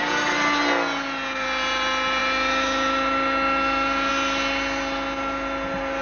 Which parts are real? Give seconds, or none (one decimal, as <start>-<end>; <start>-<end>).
0.0-6.0